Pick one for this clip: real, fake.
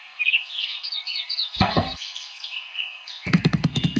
fake